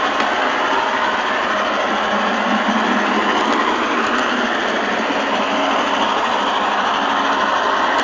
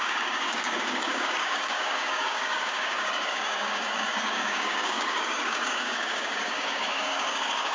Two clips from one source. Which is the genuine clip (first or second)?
first